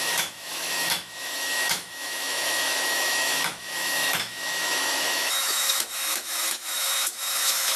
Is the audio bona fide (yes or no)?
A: no